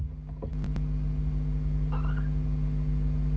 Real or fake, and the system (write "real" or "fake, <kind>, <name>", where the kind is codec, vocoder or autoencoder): real